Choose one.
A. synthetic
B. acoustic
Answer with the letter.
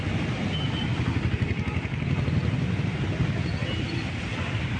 B